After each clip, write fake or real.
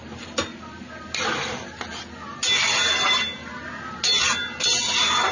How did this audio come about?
real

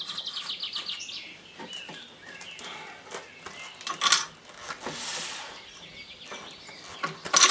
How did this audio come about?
real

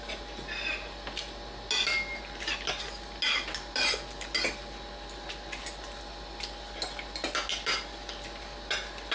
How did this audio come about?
real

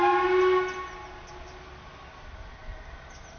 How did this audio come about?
real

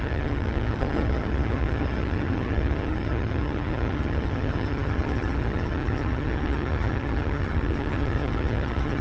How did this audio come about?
fake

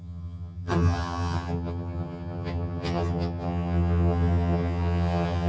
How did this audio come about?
fake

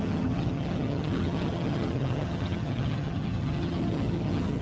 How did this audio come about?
fake